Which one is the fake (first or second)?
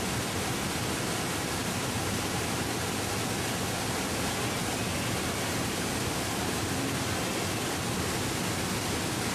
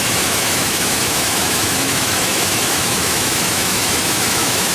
second